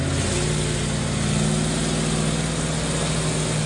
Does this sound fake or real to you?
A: real